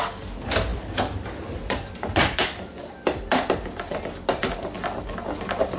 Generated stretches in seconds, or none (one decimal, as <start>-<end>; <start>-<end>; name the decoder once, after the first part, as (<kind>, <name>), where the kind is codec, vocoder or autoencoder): none